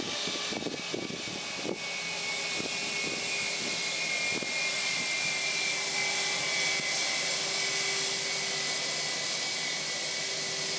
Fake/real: real